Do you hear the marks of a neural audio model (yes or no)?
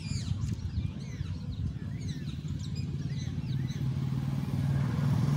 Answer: no